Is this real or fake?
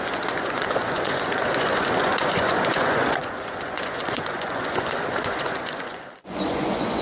fake